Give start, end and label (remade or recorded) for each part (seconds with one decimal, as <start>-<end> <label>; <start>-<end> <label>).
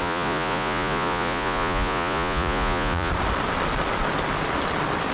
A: 0.0-3.1 remade; 3.1-5.1 recorded